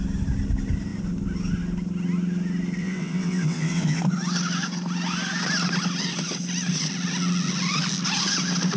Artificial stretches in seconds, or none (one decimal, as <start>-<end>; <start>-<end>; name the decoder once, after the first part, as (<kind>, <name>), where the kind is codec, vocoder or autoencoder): 2.8-4.0 (vocoder, WaveNeXt)